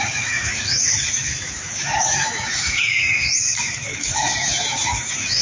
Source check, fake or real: fake